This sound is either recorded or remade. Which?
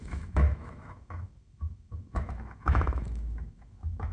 remade